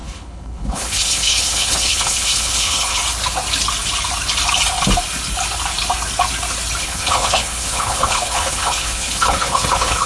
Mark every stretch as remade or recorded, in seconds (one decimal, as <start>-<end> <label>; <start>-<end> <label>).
0.0-3.0 remade; 3.0-6.8 recorded; 6.8-10.1 remade